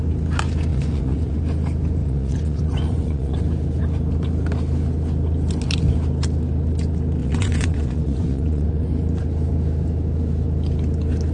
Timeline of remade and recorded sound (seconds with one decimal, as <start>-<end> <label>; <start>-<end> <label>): 0.0-0.7 recorded; 0.7-1.4 remade; 1.4-2.0 recorded; 2.0-3.4 remade; 3.4-7.2 recorded; 7.2-8.9 remade; 8.9-11.3 recorded